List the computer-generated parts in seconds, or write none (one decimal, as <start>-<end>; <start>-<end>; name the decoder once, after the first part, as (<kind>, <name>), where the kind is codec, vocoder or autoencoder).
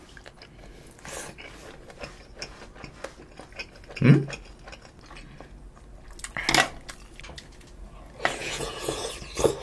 8.4-9.1 (vocoder, Vocos)